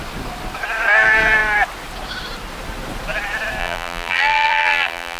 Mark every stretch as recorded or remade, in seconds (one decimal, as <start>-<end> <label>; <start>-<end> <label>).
0.0-3.6 recorded; 3.6-5.2 remade